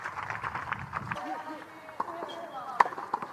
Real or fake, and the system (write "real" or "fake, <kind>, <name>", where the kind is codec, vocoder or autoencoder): real